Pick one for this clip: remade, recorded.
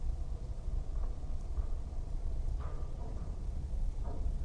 remade